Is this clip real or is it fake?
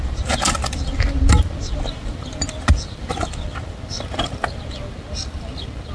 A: real